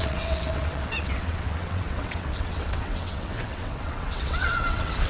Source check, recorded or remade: remade